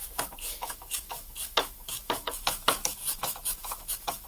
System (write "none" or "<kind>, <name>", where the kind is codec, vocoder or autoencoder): autoencoder, DAC-VAE